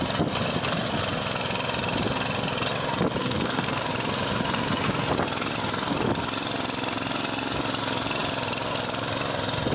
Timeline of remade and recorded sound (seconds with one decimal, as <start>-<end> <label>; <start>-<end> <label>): 0.0-3.2 recorded; 3.2-3.8 remade; 3.8-9.7 recorded